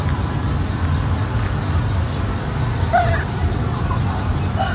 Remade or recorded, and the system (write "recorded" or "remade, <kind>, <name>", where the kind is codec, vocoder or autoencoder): recorded